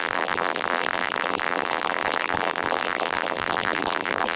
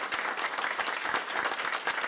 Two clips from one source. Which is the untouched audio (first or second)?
second